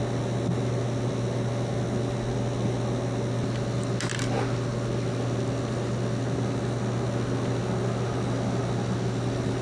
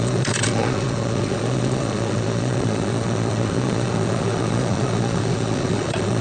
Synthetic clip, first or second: second